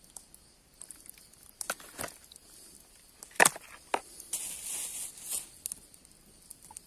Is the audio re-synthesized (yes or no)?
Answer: no